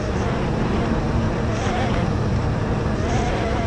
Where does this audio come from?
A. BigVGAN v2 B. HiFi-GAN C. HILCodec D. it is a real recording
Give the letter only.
A